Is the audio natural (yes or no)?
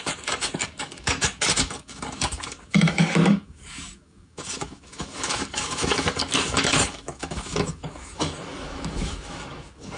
no